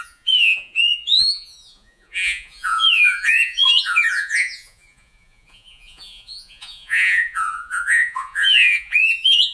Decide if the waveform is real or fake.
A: fake